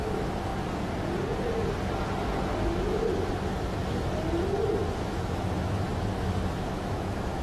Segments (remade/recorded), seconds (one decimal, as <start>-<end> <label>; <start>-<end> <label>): 0.0-0.5 remade; 0.5-4.9 recorded; 4.9-7.4 remade